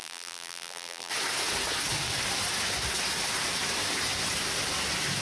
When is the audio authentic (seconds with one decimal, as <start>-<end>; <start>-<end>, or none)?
1.1-5.2